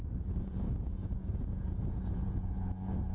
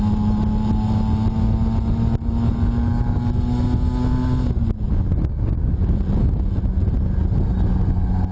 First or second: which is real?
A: second